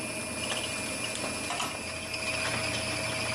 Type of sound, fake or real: real